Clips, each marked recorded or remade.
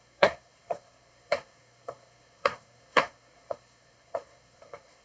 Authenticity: remade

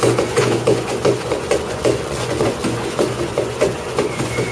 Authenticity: remade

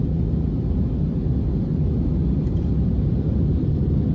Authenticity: recorded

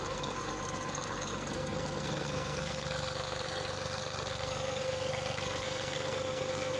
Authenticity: remade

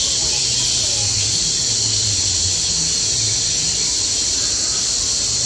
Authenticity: recorded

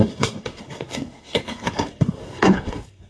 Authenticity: remade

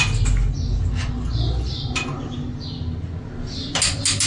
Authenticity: recorded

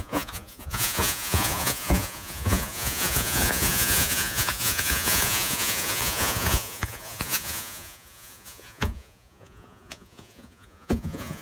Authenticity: remade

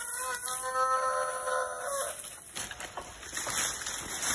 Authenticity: recorded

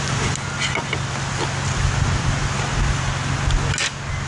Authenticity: recorded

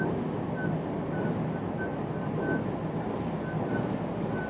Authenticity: recorded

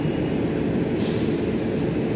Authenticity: recorded